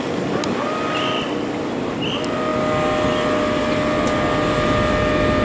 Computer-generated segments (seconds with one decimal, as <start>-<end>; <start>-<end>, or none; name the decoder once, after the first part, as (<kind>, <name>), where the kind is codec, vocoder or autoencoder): none